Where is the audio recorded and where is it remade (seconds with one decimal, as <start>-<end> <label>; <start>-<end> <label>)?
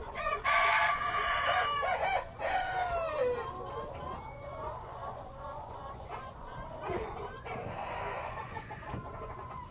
0.0-2.8 remade; 2.8-4.3 recorded; 4.3-9.7 remade